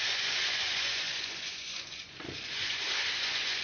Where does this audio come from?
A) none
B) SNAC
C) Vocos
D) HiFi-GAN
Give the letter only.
C